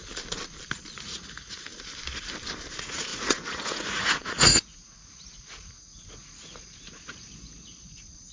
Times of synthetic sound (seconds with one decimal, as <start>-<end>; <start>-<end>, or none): 1.0-1.7; 2.7-8.3